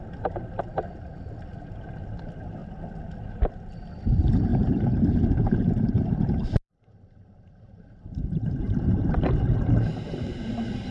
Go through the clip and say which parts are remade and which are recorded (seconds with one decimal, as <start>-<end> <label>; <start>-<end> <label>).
0.0-4.5 recorded; 4.5-9.5 remade; 9.5-10.9 recorded